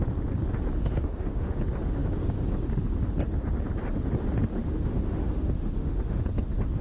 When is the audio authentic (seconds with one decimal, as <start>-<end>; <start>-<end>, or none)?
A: 0.0-0.8; 1.5-4.6; 6.2-6.8